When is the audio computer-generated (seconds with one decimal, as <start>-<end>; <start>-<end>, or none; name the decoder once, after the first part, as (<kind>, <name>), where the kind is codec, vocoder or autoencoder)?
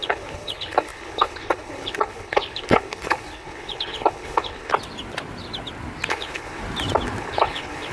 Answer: 0.0-4.7 (codec, HILCodec); 6.1-6.6; 7.2-7.9